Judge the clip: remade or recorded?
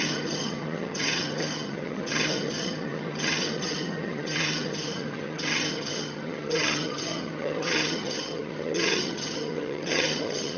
remade